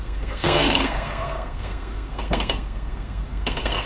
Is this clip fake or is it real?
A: fake